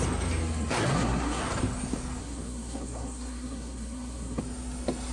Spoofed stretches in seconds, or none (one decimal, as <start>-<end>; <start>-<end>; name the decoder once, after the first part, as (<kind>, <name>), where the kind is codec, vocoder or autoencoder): 0.4-1.4 (codec, SNAC); 2.2-4.4